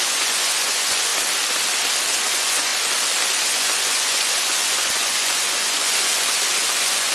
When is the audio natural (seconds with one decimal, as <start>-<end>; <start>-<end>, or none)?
1.1-2.1; 2.7-3.4